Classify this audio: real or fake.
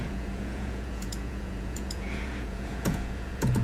fake